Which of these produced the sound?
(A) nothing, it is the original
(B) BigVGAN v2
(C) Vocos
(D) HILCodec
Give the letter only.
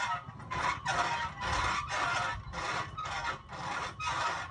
A